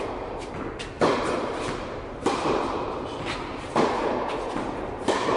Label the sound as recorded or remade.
recorded